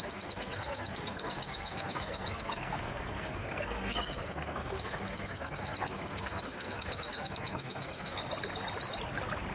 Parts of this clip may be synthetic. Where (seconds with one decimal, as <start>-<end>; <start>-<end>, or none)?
0.0-8.2